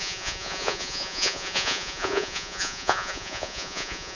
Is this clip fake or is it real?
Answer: fake